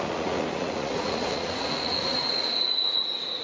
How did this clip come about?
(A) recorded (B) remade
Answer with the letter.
B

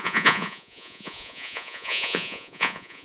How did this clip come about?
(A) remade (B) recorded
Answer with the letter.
A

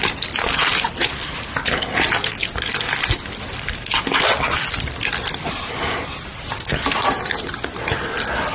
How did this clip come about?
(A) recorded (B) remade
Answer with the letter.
A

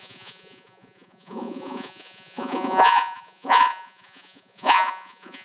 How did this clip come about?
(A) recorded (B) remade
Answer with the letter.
B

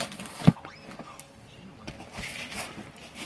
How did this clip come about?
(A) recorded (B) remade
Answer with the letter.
A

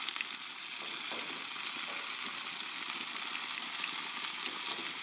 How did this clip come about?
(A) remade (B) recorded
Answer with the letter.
B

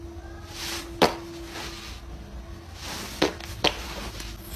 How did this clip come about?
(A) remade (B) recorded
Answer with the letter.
B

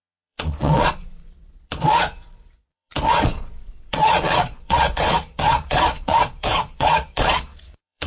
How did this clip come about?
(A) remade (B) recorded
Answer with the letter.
A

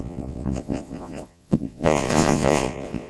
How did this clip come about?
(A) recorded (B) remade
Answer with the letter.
B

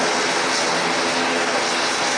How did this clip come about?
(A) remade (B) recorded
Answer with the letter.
B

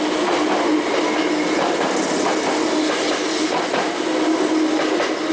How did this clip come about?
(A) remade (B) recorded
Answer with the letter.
B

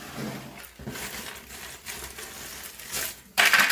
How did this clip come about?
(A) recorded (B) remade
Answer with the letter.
A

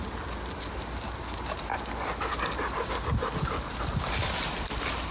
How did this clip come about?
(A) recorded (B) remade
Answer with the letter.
A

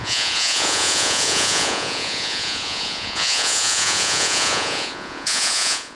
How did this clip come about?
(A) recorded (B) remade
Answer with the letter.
B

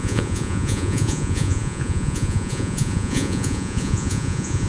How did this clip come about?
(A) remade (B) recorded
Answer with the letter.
A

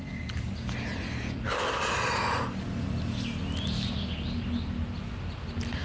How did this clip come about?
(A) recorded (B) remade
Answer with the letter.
A